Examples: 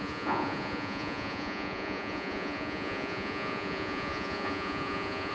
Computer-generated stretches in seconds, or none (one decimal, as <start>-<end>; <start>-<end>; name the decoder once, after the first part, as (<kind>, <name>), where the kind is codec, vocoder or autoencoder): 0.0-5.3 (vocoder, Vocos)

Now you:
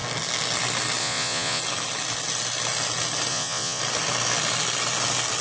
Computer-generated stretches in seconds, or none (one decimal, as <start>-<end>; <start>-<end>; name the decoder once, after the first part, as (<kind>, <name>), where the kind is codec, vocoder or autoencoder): 1.0-1.6 (vocoder, Vocos); 3.3-3.8

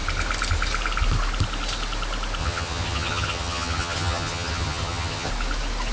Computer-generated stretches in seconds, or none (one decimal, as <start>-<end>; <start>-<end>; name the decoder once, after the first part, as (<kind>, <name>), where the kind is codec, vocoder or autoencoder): 2.4-5.3 (vocoder, HiFi-GAN)

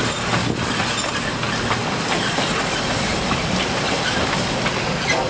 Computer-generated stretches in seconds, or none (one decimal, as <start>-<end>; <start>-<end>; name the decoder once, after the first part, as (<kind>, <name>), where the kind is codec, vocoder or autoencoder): none